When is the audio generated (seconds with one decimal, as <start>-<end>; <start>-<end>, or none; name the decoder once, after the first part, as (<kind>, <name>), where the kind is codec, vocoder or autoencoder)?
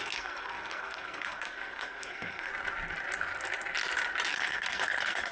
0.0-2.5 (codec, SNAC); 4.3-5.3